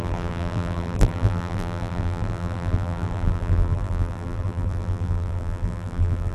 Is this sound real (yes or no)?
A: no